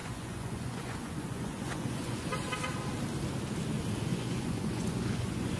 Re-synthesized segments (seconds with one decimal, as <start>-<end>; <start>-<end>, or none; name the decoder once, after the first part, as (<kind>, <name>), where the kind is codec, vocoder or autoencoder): 0.0-2.5 (vocoder, Vocos); 4.1-5.6